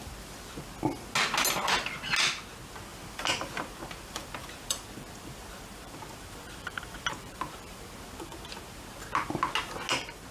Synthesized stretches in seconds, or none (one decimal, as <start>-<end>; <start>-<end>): 2.9-7.8